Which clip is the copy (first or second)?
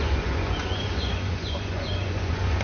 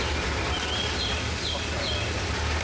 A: first